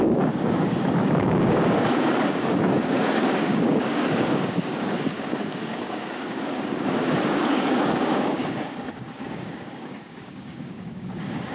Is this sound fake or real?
fake